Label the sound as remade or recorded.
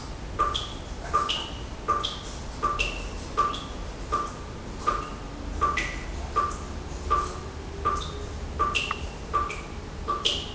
recorded